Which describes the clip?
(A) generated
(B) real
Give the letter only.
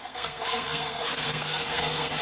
A